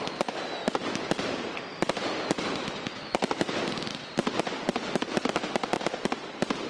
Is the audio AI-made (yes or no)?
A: no